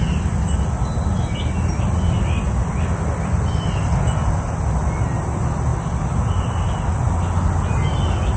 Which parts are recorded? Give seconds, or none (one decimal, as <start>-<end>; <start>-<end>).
0.0-8.4